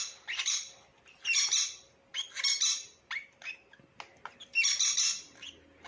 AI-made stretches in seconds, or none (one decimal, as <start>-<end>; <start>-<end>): none